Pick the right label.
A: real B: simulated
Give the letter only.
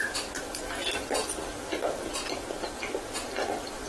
A